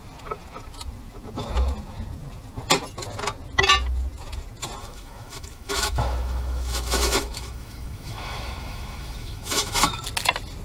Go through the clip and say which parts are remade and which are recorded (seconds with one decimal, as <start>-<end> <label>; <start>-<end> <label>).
0.0-4.8 recorded; 4.8-10.0 remade; 10.0-10.6 recorded